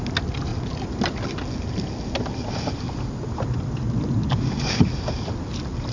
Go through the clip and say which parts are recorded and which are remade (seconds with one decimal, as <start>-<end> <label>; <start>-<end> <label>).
0.0-5.9 recorded